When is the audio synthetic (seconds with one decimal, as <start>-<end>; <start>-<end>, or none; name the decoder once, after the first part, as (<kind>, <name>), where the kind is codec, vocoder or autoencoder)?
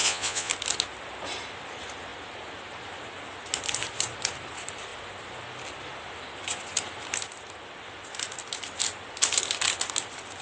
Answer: 0.0-0.5 (vocoder, Vocos)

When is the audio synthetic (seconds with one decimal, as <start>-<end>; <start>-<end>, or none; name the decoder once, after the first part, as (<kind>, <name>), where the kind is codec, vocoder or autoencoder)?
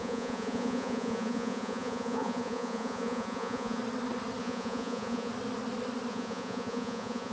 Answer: 0.0-3.8 (vocoder, Vocos); 4.4-5.3; 6.1-7.3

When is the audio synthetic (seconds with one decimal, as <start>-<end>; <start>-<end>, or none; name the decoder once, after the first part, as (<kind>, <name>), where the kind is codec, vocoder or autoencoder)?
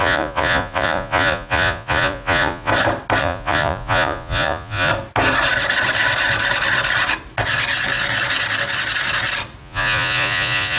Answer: 0.0-2.7 (vocoder, Vocos); 3.2-4.9; 9.6-10.8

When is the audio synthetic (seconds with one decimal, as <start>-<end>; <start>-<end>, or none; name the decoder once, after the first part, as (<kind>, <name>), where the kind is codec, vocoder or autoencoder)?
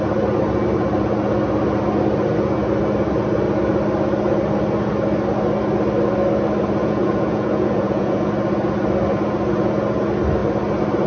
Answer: 6.8-8.3 (vocoder, Vocos)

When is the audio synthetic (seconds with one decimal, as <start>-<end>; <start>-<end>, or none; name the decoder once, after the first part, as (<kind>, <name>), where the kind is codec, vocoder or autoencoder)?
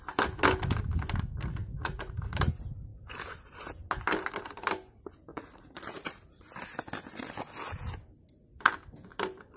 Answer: 1.6-2.5 (vocoder, Vocos); 5.3-6.2